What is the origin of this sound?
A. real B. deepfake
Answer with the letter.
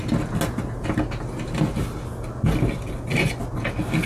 A